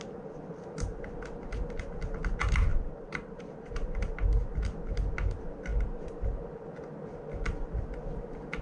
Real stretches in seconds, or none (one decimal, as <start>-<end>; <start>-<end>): 0.0-2.7; 4.1-8.6